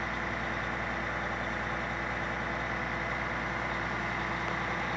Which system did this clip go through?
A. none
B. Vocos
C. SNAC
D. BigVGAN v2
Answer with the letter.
A